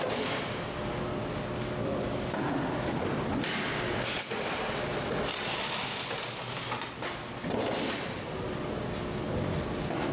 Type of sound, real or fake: real